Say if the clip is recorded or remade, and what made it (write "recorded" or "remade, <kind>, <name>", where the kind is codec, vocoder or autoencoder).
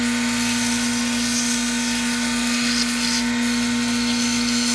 recorded